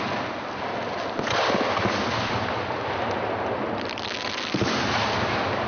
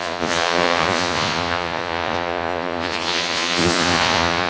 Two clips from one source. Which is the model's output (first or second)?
second